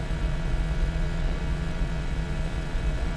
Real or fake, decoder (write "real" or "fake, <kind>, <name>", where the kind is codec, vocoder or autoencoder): fake, vocoder, Vocos